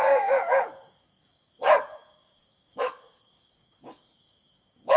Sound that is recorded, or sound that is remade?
remade